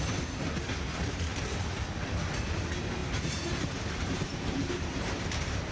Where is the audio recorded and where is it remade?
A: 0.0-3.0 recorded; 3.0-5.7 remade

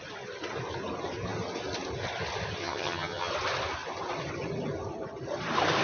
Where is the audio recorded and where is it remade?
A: 0.0-2.6 recorded; 2.6-3.3 remade; 3.3-5.8 recorded

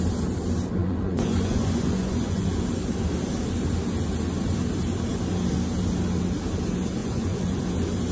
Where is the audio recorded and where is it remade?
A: 0.0-0.8 recorded; 0.8-2.5 remade; 2.5-7.0 recorded; 7.0-7.6 remade; 7.6-8.1 recorded

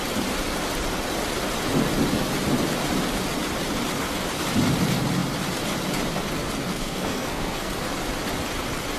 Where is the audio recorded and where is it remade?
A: 0.0-6.7 recorded; 6.7-7.7 remade; 7.7-9.0 recorded

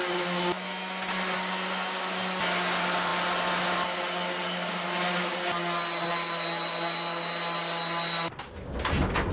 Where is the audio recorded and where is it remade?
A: 0.0-9.3 recorded